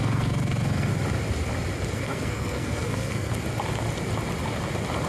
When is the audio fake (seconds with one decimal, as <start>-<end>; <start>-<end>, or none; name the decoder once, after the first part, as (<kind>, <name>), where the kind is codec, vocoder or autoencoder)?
0.0-0.9 (codec, SNAC); 1.9-3.3